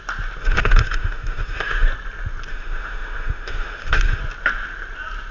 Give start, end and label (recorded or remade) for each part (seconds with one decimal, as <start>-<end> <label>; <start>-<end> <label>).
0.0-0.4 recorded; 0.4-1.9 remade; 1.9-2.5 recorded; 2.5-4.2 remade; 4.2-5.3 recorded